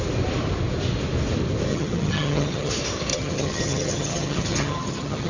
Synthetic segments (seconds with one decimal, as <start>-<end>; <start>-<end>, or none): 1.7-2.7; 3.1-5.3